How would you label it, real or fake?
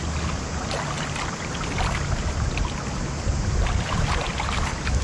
real